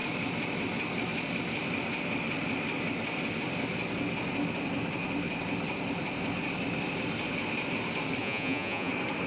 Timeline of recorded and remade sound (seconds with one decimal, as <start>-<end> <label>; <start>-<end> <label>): 0.0-8.2 recorded; 8.2-8.9 remade; 8.9-9.3 recorded